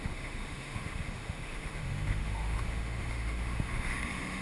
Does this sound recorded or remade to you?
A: remade